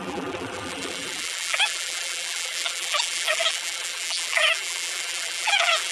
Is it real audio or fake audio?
fake